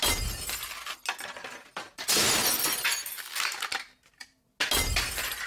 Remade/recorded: recorded